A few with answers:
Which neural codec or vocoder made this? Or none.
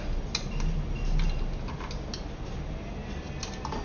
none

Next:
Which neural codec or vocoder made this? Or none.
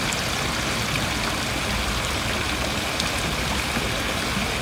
none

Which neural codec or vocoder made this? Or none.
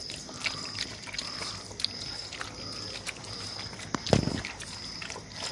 none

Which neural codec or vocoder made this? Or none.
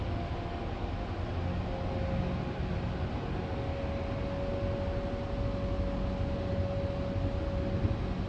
none